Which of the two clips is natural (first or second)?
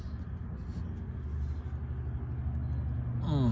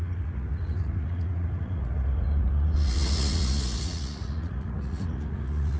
first